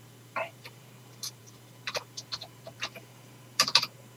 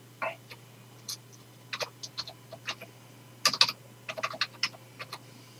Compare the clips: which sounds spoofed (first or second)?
first